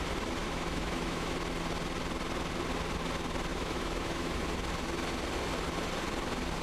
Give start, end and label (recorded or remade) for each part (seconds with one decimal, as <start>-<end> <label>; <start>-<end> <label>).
0.0-0.4 recorded; 0.4-1.3 remade; 1.3-3.5 recorded; 3.5-4.4 remade; 4.4-6.6 recorded